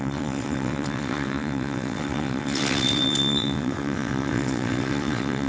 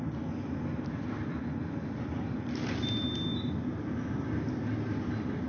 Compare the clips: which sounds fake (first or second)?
first